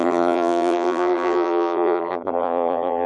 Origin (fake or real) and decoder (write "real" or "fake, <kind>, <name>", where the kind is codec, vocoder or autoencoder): fake, vocoder, BigVGAN v2